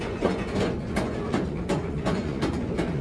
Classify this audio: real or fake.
fake